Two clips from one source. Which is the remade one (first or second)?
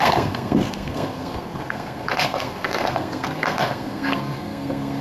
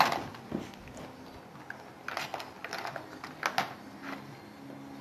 first